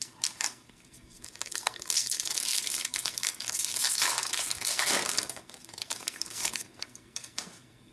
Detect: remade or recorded remade